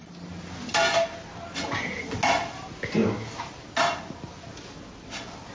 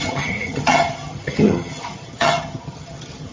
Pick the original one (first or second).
first